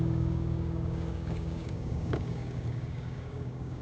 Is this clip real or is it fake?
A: fake